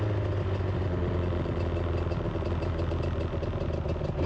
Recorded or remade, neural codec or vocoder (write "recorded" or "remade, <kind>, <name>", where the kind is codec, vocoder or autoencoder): recorded